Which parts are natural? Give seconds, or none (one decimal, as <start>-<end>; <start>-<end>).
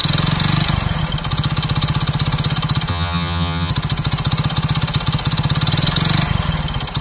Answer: 0.0-2.9; 3.7-7.0